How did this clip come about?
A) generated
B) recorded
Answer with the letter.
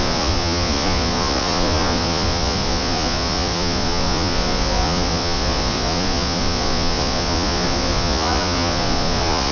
A